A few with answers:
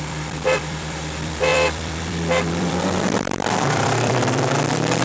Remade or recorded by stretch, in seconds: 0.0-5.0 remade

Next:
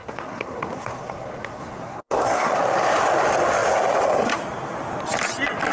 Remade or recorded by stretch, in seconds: 0.0-2.6 remade; 2.6-5.7 recorded